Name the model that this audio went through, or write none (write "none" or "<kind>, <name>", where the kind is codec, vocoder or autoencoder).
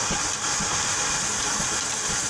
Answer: none